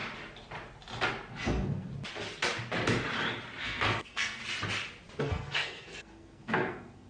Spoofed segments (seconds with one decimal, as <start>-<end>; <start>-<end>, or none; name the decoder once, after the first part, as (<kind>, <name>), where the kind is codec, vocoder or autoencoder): 1.3-1.9 (codec, SNAC); 3.6-4.4; 5.2-7.1